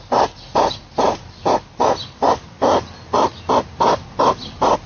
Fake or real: real